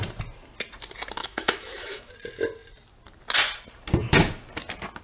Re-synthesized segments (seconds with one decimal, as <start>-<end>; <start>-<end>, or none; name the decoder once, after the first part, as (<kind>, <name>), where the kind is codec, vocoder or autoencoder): 1.2-2.1 (autoencoder, DAC-VAE)